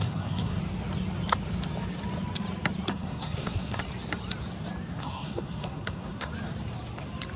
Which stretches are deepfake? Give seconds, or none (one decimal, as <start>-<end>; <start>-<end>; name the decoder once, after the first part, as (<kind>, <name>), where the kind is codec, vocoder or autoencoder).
0.0-0.6 (codec, SNAC); 2.9-3.8; 4.9-6.3